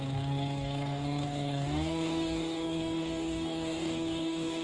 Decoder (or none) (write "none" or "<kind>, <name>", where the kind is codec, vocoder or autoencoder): codec, DAC